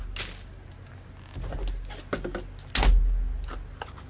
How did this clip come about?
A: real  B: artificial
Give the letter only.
A